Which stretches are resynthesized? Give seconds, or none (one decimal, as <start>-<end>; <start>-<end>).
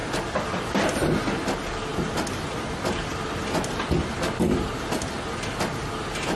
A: none